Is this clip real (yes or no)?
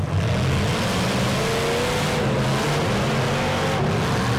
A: yes